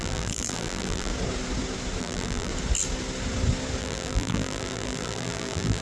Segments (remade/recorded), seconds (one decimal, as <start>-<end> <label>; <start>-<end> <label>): 0.0-1.1 remade; 1.1-2.0 recorded; 2.0-2.5 remade; 2.5-3.8 recorded; 3.8-5.8 remade